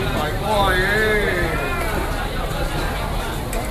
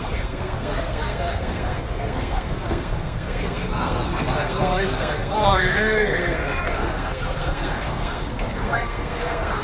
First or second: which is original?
first